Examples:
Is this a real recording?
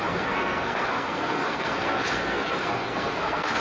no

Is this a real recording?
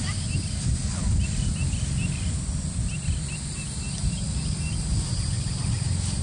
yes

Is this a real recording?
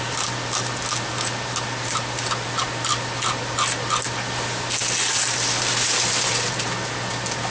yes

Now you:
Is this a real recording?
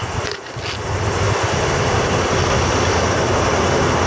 yes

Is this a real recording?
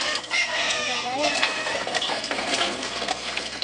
no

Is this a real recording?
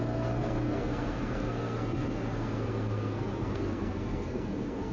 no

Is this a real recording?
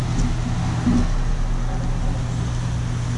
yes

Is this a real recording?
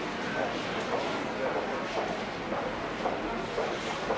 yes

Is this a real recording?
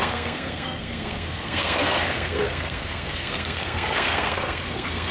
no